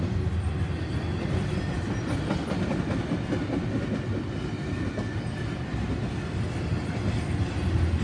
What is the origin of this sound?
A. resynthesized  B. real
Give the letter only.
B